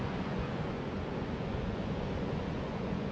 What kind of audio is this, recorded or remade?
remade